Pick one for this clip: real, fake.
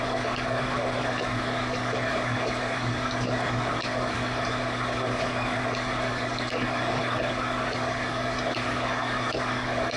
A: fake